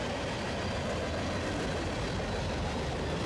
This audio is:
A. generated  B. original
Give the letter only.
B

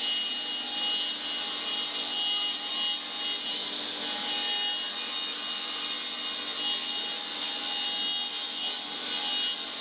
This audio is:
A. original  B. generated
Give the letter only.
A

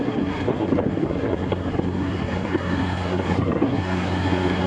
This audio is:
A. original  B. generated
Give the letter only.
B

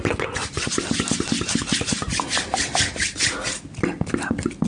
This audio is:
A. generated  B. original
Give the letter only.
B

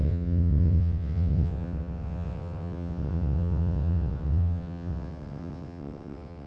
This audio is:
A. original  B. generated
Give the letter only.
B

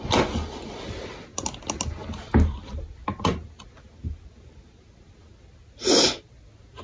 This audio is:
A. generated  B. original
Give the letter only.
B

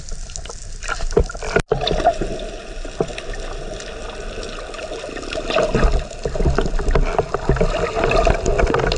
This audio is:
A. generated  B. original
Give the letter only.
B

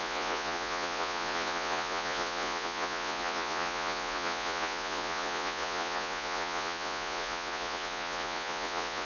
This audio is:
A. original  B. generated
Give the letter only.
B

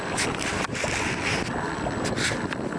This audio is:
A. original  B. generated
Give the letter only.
B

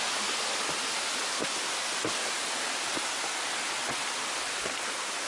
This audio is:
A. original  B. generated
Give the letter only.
A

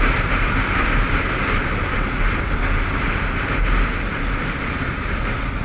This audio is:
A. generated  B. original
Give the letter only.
B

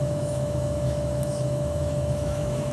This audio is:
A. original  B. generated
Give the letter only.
B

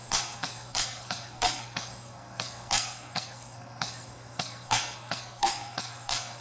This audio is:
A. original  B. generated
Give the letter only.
B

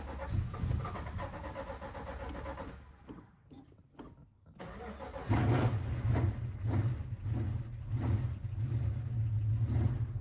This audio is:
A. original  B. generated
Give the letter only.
A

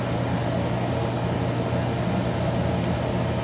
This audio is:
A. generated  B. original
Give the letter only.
B